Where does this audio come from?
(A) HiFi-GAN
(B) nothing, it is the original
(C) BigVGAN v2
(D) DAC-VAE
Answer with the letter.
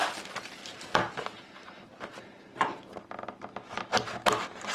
B